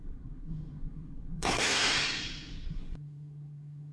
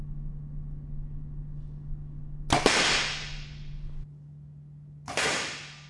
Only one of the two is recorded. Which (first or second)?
second